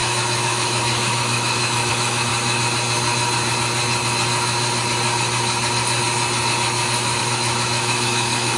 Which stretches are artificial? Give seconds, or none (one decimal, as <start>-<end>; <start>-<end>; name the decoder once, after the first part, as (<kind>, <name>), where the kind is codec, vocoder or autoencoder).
0.0-2.3 (autoencoder, DAC-VAE); 7.2-8.6